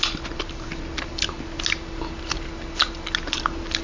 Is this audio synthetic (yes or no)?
no